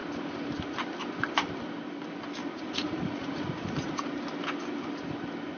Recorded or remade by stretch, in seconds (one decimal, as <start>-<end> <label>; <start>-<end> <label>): 0.0-2.4 recorded; 2.4-4.0 remade; 4.0-5.6 recorded

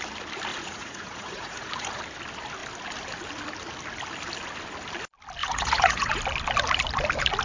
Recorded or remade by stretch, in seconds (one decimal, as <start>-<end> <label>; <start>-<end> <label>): 0.0-0.5 recorded; 0.5-2.0 remade; 2.0-5.4 recorded; 5.4-6.2 remade; 6.2-7.4 recorded